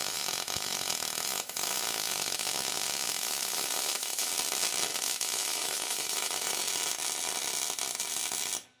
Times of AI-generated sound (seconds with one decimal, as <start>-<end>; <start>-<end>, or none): 0.0-4.3; 4.9-6.7